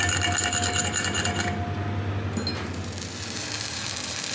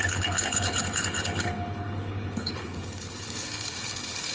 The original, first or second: first